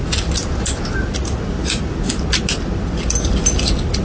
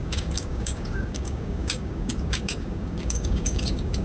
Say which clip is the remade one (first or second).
second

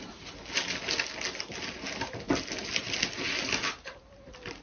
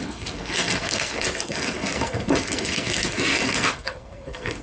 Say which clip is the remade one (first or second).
second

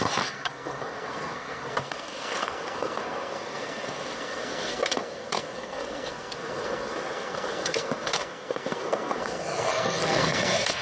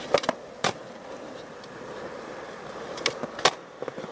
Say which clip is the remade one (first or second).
first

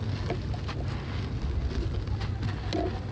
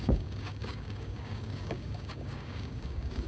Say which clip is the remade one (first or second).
second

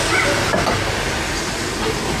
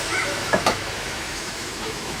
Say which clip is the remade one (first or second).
second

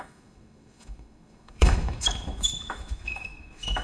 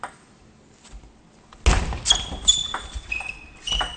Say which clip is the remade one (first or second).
first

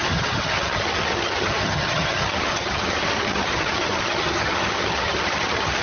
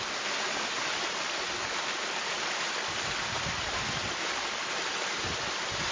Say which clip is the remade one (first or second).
first